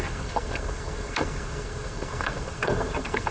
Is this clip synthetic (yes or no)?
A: yes